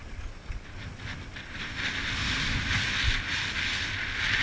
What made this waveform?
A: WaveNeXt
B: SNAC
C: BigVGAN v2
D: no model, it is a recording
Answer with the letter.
D